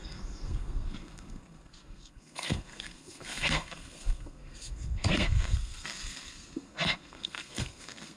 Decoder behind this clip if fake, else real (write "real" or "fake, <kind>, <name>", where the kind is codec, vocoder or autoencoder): fake, codec, SNAC